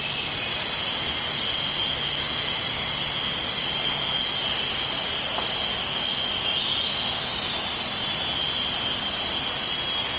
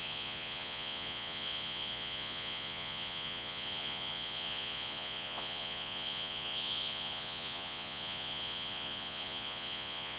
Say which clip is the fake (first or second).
second